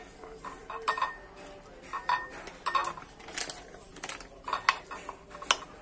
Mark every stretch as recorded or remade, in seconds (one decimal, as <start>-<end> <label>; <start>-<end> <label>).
0.0-0.6 recorded; 0.6-1.3 remade; 1.3-2.8 recorded; 2.8-3.4 remade; 3.4-3.9 recorded; 3.9-4.4 remade; 4.4-5.8 recorded